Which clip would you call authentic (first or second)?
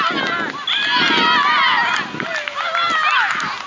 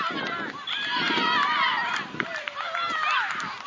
first